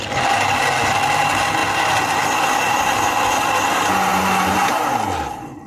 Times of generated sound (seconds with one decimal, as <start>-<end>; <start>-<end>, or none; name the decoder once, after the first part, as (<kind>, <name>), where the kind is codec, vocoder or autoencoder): none